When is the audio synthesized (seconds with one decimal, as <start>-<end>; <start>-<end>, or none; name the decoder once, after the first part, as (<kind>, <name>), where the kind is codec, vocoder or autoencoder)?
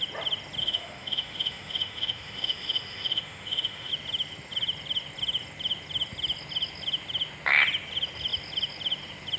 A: 0.6-3.9 (autoencoder, DAC-VAE)